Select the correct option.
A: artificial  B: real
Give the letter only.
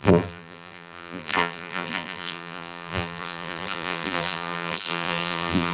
A